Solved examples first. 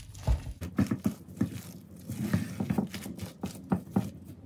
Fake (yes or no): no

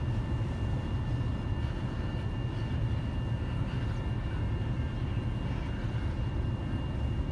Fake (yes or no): no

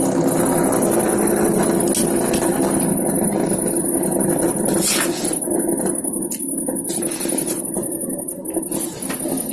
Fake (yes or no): no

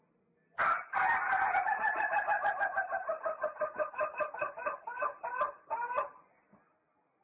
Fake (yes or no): no